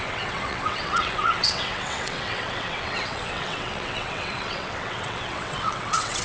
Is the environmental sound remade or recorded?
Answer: remade